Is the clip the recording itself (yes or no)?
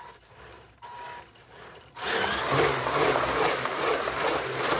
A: yes